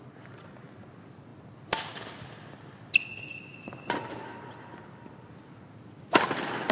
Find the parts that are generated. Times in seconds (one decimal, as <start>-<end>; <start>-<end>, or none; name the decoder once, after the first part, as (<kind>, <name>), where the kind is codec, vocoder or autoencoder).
none